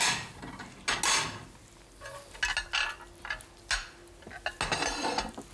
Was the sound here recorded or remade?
recorded